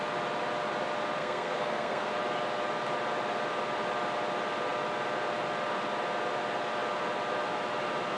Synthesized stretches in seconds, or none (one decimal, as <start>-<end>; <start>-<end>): 1.2-2.1